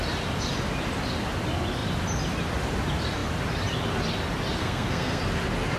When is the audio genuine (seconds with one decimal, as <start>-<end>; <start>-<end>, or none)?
0.0-4.6; 5.2-5.8